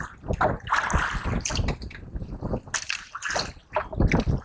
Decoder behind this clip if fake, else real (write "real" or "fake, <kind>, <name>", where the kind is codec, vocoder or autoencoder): real